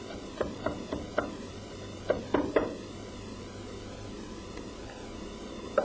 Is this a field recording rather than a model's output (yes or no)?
no